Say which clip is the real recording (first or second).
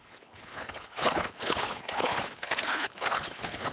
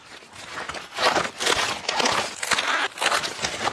second